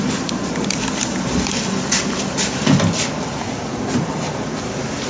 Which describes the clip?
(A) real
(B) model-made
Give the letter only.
B